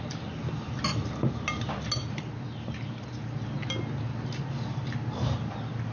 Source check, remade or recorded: recorded